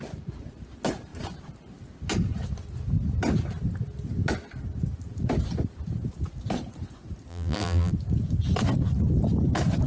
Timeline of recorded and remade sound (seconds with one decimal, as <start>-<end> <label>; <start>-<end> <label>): 0.0-7.3 recorded; 7.3-7.9 remade; 7.9-9.9 recorded